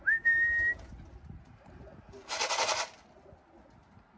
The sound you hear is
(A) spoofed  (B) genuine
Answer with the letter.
B